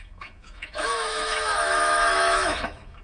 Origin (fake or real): fake